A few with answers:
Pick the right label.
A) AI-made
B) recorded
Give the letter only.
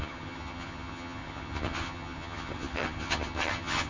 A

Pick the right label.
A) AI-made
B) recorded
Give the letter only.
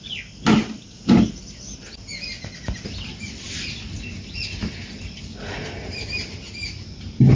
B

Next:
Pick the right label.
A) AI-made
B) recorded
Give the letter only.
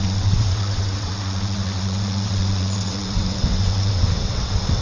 A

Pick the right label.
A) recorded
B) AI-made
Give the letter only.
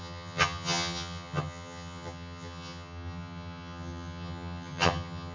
B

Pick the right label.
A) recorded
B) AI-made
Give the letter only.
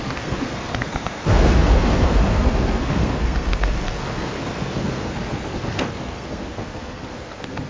B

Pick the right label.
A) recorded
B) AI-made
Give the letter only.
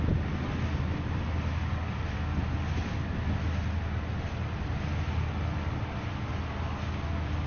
A